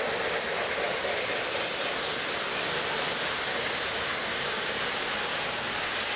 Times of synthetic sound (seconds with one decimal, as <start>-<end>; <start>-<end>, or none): 3.5-4.8; 5.3-6.2